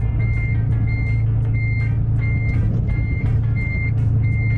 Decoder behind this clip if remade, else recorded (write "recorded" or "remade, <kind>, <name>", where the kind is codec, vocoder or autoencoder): recorded